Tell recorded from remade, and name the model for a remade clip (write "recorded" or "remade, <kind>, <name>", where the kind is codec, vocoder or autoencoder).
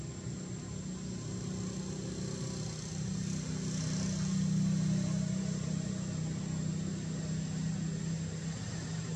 recorded